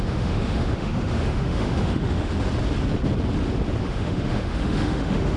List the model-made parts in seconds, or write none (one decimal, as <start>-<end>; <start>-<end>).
0.0-2.3; 3.8-5.4